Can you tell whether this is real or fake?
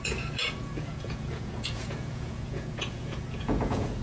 fake